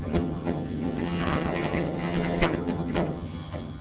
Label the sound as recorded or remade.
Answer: remade